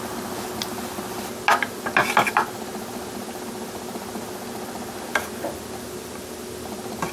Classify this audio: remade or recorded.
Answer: recorded